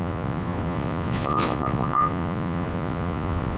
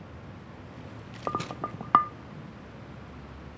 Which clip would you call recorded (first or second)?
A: second